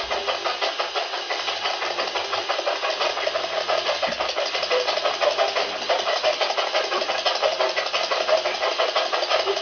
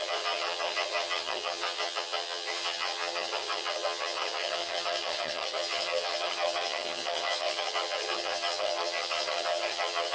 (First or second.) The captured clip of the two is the first